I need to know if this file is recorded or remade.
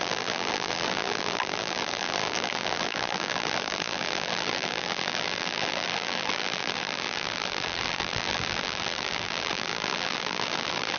remade